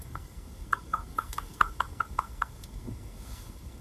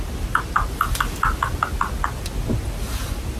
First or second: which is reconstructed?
first